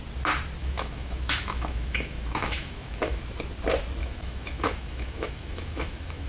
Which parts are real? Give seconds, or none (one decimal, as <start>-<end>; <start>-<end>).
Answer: 0.0-0.6; 3.2-4.0